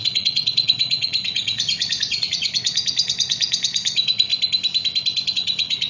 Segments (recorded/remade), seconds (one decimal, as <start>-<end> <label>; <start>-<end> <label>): 0.0-4.3 remade; 4.3-5.3 recorded; 5.3-5.9 remade